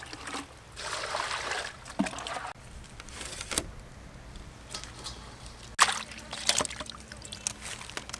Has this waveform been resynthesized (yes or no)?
no